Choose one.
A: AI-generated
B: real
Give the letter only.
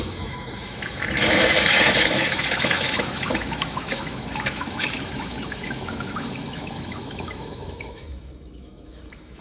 A